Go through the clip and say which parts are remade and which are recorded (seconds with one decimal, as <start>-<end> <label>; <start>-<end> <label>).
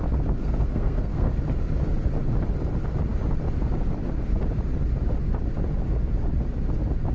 0.0-0.4 recorded; 0.4-1.3 remade; 1.3-7.1 recorded